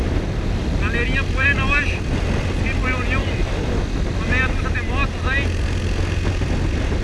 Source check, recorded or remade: recorded